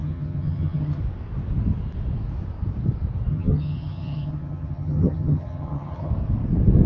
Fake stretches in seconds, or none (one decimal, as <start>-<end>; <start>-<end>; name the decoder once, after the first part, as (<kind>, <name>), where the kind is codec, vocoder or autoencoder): 0.0-1.0 (vocoder, HiFi-GAN); 3.3-6.1

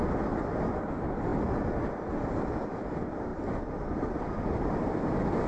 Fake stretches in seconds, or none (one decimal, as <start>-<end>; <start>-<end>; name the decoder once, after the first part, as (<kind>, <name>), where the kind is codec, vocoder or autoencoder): 3.3-5.0 (vocoder, BigVGAN v2)

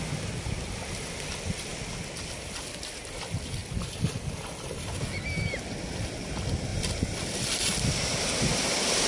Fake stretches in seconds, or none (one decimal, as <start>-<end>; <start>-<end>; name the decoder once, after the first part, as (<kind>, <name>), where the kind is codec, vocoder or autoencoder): 6.7-7.6 (vocoder, BigVGAN v2)

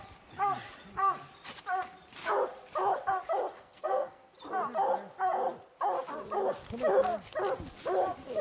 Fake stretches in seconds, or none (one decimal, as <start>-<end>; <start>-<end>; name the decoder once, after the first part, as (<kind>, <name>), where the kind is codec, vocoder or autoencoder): 3.6-4.3 (codec, SNAC)